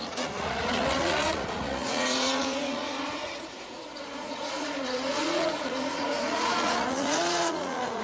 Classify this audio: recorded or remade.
remade